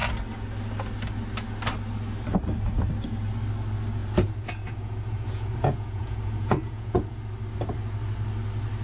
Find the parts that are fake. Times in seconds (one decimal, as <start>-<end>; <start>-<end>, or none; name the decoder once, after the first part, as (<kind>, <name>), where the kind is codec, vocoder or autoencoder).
4.0-7.2 (vocoder, Vocos)